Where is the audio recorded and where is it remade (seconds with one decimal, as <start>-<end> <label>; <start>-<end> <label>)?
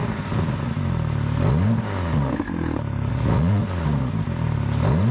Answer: 0.0-3.1 recorded; 3.1-3.6 remade; 3.6-5.1 recorded